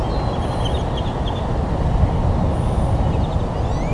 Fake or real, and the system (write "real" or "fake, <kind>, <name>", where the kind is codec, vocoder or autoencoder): real